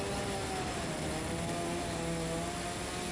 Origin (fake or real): real